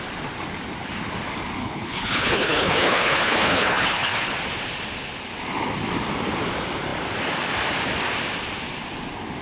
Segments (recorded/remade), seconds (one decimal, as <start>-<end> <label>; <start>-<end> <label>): 0.0-1.6 recorded; 1.6-4.3 remade; 4.3-9.4 recorded